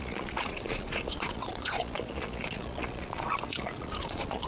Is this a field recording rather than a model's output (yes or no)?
no